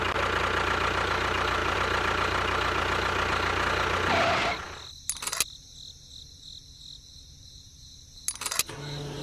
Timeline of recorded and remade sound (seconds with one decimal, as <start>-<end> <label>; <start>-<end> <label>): 0.0-9.2 recorded